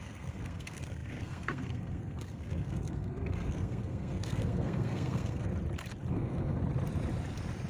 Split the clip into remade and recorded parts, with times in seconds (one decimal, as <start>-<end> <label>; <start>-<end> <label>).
0.0-5.5 remade; 5.5-6.1 recorded; 6.1-6.6 remade; 6.6-7.7 recorded